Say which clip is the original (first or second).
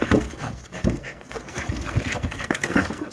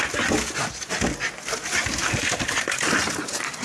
second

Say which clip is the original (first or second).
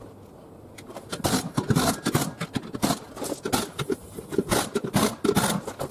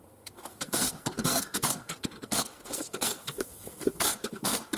first